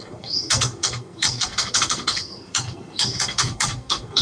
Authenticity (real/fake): fake